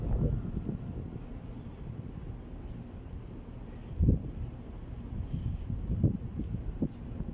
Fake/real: real